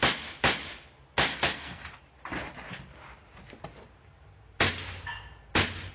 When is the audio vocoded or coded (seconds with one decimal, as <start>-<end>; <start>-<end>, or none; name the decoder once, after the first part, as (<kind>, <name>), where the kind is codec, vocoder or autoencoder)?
1.3-1.9 (codec, SNAC)